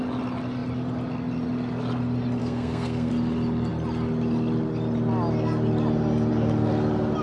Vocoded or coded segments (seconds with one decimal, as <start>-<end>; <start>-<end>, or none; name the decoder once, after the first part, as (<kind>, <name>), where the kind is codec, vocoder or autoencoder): 2.4-3.1 (codec, SNAC)